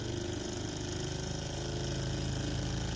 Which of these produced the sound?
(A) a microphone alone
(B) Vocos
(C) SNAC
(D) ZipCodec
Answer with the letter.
B